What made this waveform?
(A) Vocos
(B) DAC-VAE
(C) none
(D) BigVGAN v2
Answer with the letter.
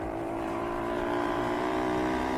D